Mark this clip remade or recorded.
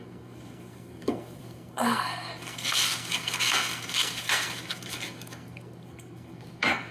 remade